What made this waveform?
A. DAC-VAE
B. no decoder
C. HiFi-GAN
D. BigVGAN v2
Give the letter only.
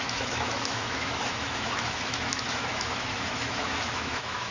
A